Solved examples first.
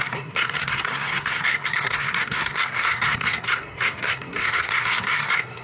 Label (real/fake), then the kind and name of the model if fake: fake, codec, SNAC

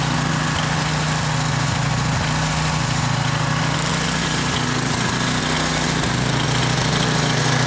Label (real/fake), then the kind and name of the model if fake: real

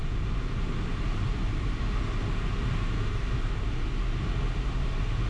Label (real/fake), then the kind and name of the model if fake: real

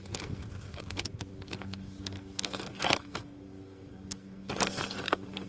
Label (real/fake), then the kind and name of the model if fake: fake, codec, SNAC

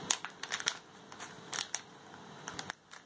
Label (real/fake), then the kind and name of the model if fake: real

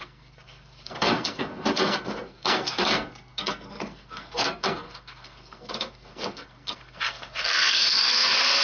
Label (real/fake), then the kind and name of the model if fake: fake, codec, SNAC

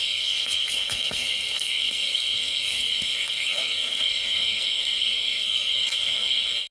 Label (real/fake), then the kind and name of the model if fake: fake, codec, SNAC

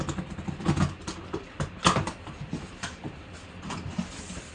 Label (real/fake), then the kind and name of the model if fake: real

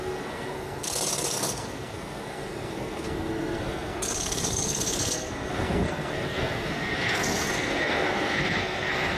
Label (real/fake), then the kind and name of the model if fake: fake, codec, SNAC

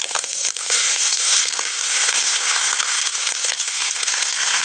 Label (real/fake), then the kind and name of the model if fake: fake, codec, SNAC